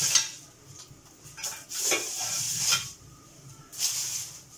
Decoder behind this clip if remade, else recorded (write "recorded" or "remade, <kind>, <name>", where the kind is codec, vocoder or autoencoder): recorded